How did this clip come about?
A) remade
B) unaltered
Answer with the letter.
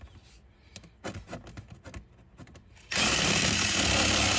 B